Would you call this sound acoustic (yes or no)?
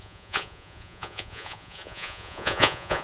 no